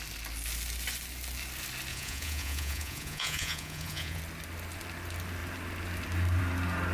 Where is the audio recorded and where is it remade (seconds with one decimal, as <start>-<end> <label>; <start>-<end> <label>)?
0.0-1.9 recorded; 1.9-4.2 remade; 4.2-6.9 recorded